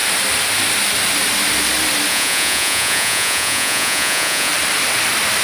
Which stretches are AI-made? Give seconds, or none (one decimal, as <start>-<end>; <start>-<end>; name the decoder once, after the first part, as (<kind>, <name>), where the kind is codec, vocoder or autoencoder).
2.1-4.5 (vocoder, Vocos)